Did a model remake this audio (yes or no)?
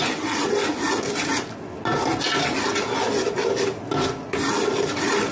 no